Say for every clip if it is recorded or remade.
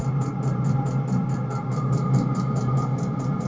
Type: recorded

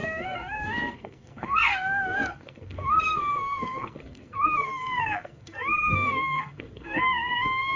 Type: remade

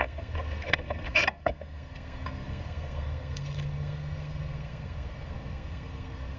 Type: remade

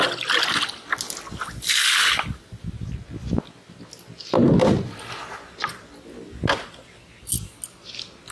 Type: recorded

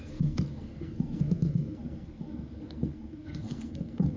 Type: remade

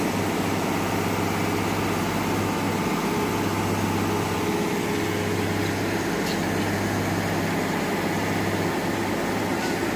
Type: recorded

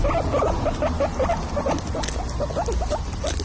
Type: recorded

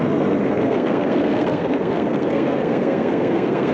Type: remade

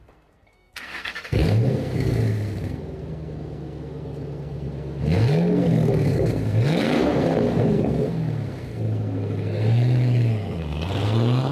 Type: remade